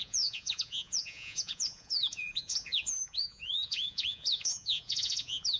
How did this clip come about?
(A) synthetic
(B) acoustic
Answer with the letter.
A